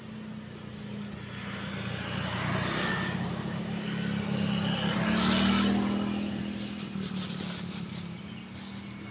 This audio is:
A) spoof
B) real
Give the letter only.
B